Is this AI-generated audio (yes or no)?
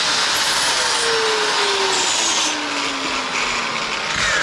no